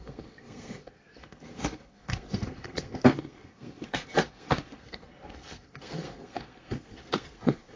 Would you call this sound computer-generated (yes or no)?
yes